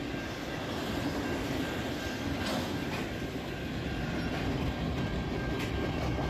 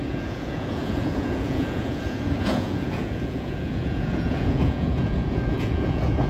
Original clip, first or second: first